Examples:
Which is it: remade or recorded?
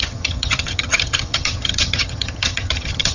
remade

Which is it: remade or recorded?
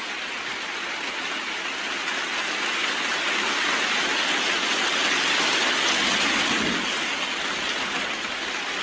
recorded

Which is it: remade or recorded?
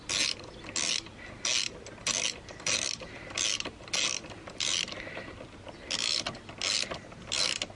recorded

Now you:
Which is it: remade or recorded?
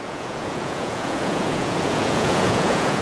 remade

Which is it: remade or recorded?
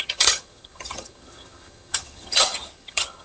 remade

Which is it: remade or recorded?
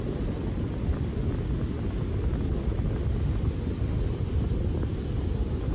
recorded